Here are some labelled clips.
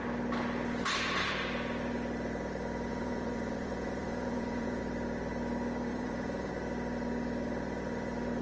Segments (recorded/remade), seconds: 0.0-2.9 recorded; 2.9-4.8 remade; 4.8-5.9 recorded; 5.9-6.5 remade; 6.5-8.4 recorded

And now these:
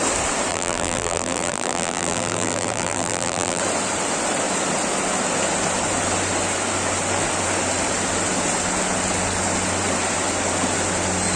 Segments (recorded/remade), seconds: 0.0-0.5 recorded; 0.5-3.6 remade; 3.6-11.4 recorded

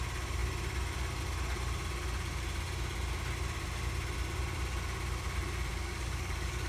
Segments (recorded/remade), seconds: 0.0-5.7 recorded; 5.7-6.7 remade

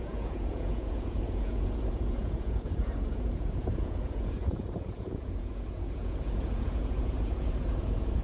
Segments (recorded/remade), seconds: 0.0-8.2 remade